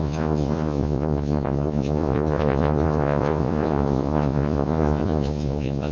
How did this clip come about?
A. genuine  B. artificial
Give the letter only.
B